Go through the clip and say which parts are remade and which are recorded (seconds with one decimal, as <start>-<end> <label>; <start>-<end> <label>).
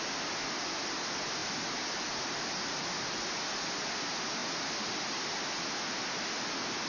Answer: 0.0-6.9 recorded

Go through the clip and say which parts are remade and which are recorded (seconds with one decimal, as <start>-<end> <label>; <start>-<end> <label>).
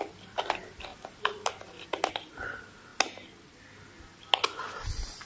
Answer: 0.0-5.3 recorded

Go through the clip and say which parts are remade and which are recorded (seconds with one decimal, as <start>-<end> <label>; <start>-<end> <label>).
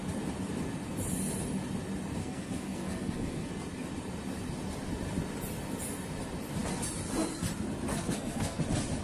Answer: 0.0-2.2 recorded; 2.2-3.5 remade; 3.5-7.9 recorded; 7.9-8.6 remade; 8.6-9.0 recorded